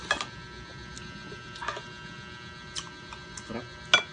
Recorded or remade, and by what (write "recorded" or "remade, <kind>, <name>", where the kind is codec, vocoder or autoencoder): recorded